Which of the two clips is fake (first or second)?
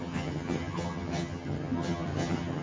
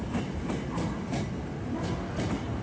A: first